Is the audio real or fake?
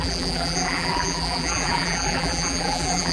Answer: fake